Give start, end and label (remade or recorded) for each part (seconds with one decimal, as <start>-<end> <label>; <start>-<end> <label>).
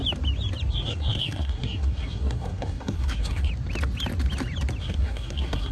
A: 0.0-0.7 recorded; 0.7-3.5 remade; 3.5-4.8 recorded; 4.8-5.7 remade